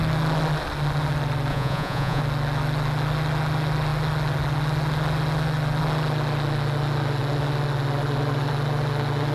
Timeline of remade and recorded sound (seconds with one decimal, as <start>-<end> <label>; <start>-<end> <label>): 0.0-1.5 recorded; 1.5-2.2 remade; 2.2-9.3 recorded